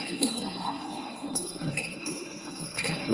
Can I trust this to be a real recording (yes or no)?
no